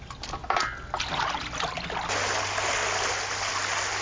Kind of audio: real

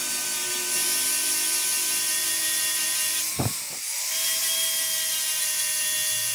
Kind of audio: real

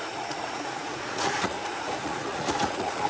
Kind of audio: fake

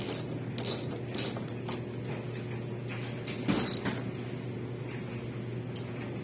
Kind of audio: real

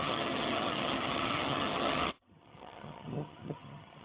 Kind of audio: fake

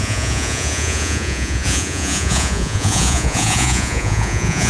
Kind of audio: fake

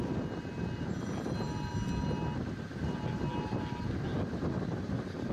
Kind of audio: real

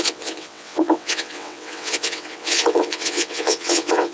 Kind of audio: fake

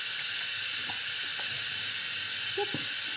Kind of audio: real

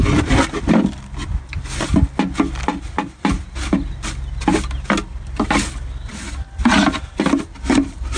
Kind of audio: real